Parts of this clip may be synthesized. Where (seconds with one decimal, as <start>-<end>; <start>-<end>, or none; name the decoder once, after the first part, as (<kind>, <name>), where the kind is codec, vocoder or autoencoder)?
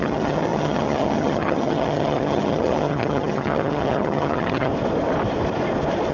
0.0-4.7 (vocoder, HiFi-GAN)